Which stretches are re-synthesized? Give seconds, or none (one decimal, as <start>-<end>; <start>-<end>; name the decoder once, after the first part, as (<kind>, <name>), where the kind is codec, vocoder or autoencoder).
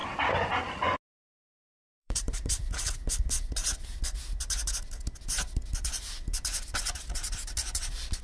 1.6-2.9 (vocoder, BigVGAN v2)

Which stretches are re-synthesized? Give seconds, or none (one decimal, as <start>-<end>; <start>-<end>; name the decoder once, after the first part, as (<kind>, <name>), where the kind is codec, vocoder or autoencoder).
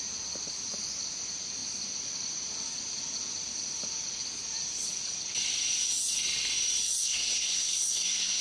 7.0-8.4 (codec, SNAC)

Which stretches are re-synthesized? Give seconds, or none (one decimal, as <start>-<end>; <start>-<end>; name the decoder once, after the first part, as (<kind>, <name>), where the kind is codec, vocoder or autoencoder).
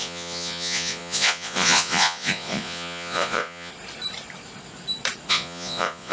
0.0-3.7 (vocoder, Vocos); 5.3-6.1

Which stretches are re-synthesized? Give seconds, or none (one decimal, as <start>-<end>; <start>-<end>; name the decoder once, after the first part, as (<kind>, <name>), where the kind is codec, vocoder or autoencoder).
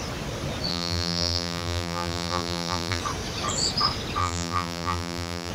0.7-3.0 (vocoder, BigVGAN v2); 4.2-5.5